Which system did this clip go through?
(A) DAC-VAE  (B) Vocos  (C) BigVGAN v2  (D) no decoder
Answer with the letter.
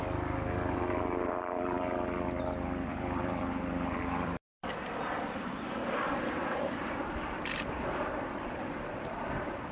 C